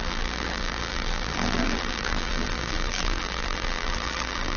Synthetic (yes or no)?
yes